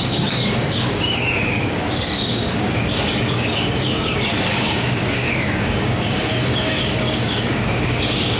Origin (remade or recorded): remade